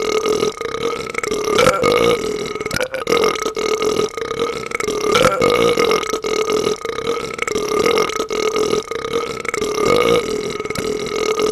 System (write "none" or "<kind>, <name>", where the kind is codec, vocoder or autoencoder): none